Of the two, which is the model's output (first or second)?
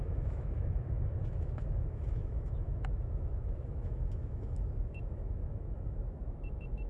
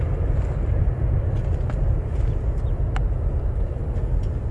first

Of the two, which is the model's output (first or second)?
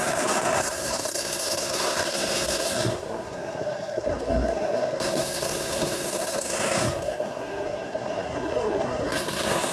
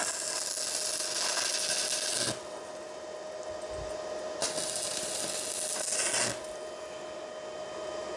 first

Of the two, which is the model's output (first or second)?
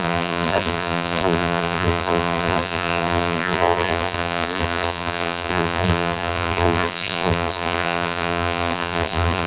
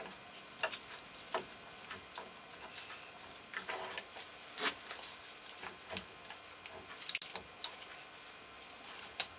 first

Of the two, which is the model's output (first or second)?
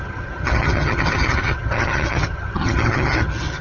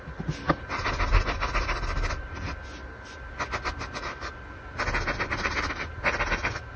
first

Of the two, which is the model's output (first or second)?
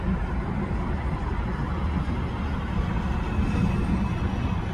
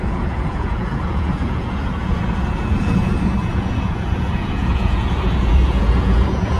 second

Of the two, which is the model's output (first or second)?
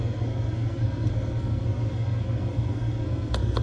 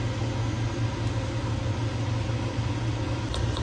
first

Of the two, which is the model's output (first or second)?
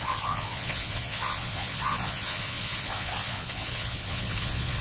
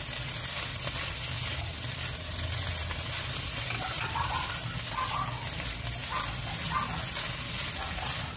first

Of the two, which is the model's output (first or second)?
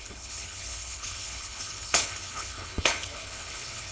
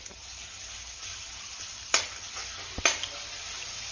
first